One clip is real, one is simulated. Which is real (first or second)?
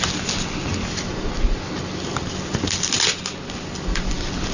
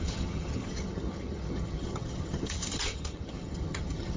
first